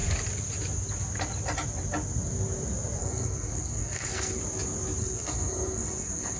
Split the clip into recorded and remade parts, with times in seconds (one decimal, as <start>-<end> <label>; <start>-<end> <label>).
0.0-3.0 recorded; 3.0-4.4 remade; 4.4-5.0 recorded; 5.0-6.4 remade